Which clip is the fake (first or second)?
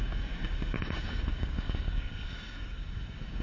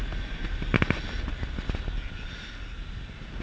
first